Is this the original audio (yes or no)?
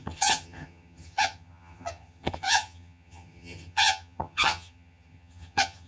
no